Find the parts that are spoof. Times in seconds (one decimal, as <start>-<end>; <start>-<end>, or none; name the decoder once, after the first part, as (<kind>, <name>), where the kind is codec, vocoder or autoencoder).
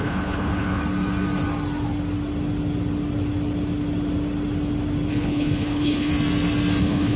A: 0.0-0.8 (codec, HILCodec); 5.1-6.1; 6.8-7.2